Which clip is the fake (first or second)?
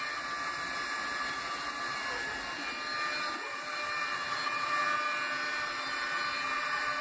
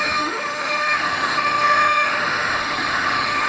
second